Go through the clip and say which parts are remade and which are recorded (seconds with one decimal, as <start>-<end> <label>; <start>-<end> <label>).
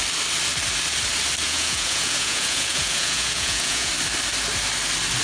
0.0-1.4 recorded; 1.4-3.9 remade; 3.9-5.2 recorded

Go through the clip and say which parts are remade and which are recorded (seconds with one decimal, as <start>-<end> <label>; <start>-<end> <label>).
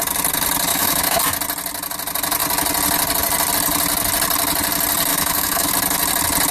0.0-0.7 recorded; 0.7-1.2 remade; 1.2-5.1 recorded; 5.1-5.7 remade; 5.7-6.5 recorded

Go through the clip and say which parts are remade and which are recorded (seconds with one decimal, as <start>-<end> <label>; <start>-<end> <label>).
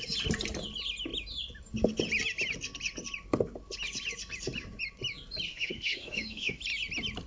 0.0-5.5 recorded; 5.5-6.6 remade; 6.6-7.3 recorded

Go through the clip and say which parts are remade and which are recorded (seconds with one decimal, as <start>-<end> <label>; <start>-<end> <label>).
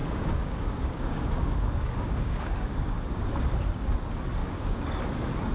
0.0-3.3 remade; 3.3-4.4 recorded; 4.4-5.0 remade; 5.0-5.5 recorded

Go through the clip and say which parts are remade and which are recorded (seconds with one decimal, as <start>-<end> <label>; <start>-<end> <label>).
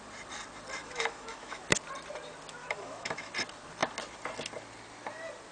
0.0-0.8 recorded; 0.8-1.6 remade; 1.6-2.6 recorded; 2.6-3.3 remade; 3.3-5.5 recorded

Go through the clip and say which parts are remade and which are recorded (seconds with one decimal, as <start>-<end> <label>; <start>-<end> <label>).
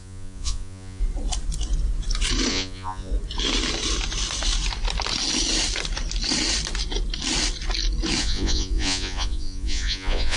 0.0-1.0 remade; 1.0-2.5 recorded; 2.5-3.1 remade; 3.1-8.2 recorded; 8.2-10.4 remade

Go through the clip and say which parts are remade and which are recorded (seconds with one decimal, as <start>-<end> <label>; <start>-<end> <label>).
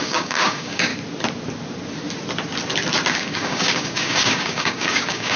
0.0-0.9 remade; 0.9-3.1 recorded; 3.1-5.4 remade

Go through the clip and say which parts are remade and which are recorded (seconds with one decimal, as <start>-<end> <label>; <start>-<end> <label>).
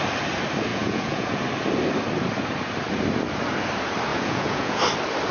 0.0-0.7 recorded; 0.7-1.4 remade; 1.4-4.1 recorded; 4.1-4.8 remade; 4.8-5.3 recorded